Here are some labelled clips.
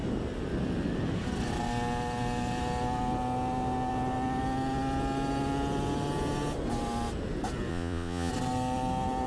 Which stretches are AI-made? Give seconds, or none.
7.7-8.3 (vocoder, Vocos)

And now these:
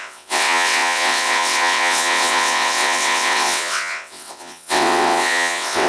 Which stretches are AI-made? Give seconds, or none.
0.0-5.9 (vocoder, WaveNeXt)

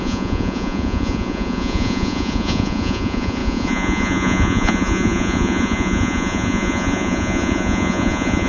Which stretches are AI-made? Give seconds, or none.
0.0-8.5 (vocoder, Vocos)

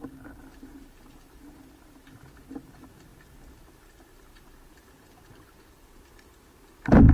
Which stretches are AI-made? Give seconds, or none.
none

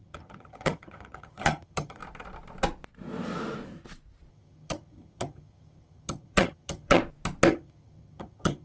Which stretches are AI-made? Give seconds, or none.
0.0-2.0 (vocoder, HiFi-GAN); 4.3-7.0; 7.5-8.6

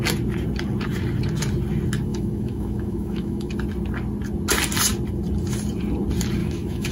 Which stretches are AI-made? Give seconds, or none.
2.1-3.5 (autoencoder, DAC-VAE); 6.4-6.9